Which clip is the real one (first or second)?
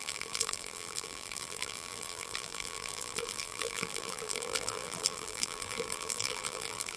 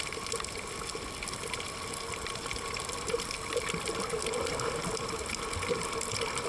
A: second